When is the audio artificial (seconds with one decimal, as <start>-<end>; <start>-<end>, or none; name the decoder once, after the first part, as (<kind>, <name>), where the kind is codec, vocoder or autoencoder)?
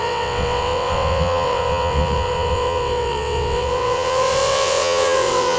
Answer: 0.0-5.6 (vocoder, WaveNeXt)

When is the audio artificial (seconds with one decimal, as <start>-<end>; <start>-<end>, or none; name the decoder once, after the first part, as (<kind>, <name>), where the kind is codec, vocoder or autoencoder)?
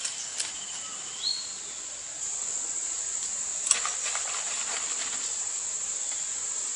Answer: none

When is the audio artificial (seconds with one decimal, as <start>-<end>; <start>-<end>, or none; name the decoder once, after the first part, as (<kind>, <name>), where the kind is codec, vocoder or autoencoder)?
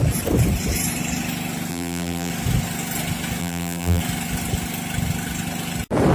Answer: 1.7-2.3 (vocoder, BigVGAN v2); 3.4-4.0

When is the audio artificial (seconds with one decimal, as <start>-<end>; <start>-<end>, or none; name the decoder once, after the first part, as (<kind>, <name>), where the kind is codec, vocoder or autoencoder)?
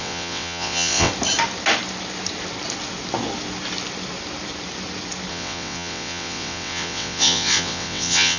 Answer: 0.0-1.1 (vocoder, WaveNeXt); 5.3-8.4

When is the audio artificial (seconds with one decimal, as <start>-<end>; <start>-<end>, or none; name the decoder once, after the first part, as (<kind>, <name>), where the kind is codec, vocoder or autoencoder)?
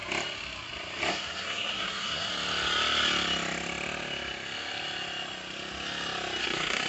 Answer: 1.1-2.3 (codec, SNAC); 6.4-6.9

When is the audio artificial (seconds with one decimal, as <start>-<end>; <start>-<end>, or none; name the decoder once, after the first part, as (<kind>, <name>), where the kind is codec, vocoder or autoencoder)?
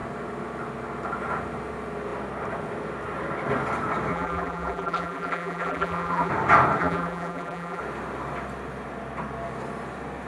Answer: 4.1-6.3 (vocoder, BigVGAN v2); 6.8-7.8